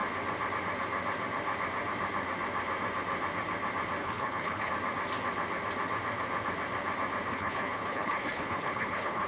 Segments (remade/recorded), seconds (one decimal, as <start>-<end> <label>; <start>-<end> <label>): 0.0-4.0 recorded; 4.0-4.7 remade; 4.7-7.3 recorded; 7.3-9.3 remade